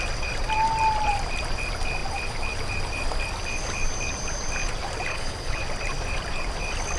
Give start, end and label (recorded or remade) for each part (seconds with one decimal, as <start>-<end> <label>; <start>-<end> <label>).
0.0-5.1 recorded; 5.1-5.6 remade; 5.6-7.0 recorded